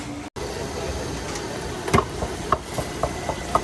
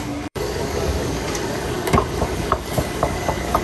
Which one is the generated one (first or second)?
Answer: second